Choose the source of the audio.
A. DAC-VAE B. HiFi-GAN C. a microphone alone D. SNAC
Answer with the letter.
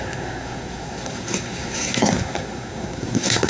D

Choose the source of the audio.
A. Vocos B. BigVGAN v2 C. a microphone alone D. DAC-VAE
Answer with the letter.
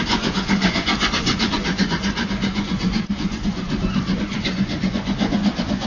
A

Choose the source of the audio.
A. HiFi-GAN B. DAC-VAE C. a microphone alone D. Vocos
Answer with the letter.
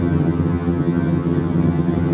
A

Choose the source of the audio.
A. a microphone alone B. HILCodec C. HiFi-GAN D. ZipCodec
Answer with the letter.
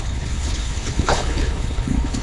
B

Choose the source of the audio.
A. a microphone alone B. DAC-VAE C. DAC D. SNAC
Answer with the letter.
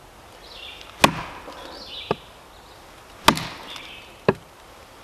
A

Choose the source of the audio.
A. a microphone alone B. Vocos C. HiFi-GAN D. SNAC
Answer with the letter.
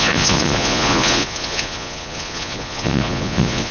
B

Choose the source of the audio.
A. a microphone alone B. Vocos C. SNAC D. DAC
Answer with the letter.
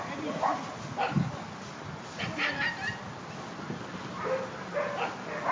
A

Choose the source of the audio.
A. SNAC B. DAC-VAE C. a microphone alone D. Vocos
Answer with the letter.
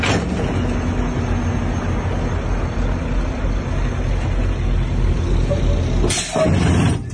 C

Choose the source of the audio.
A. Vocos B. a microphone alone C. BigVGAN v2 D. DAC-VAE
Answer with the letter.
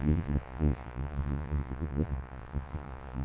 A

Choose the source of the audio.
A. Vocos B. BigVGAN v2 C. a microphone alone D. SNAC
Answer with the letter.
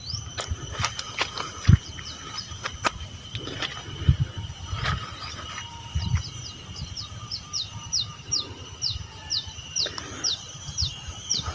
B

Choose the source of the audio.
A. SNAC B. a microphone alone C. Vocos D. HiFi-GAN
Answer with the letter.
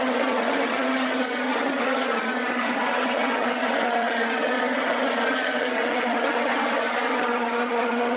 D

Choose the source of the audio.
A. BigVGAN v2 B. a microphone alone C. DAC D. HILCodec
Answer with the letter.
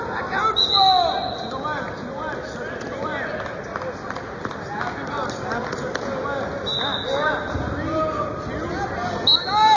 B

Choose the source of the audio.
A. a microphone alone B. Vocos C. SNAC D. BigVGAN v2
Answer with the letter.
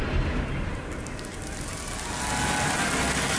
A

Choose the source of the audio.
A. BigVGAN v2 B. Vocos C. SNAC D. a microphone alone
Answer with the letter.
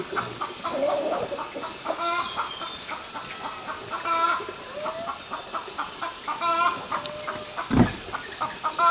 D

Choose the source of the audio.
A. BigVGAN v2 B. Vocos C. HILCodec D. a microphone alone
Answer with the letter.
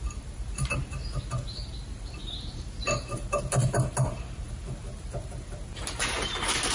A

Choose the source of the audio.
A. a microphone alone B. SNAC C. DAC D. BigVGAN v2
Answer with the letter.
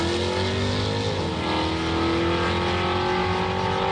A